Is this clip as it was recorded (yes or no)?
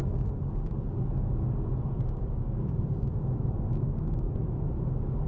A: no